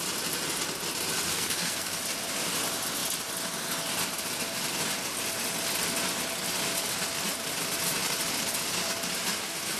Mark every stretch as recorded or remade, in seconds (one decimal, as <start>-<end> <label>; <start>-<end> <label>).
0.0-1.3 recorded; 1.3-2.0 remade; 2.0-9.8 recorded